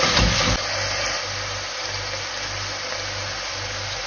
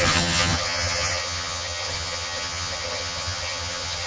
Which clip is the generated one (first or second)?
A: second